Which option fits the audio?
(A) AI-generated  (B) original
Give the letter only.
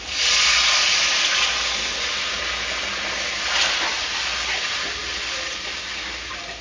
B